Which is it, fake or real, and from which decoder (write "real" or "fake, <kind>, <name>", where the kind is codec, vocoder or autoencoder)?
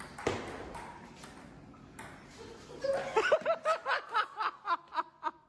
real